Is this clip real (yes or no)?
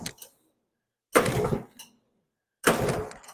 yes